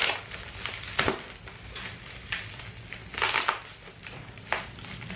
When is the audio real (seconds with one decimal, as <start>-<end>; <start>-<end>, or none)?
0.0-5.2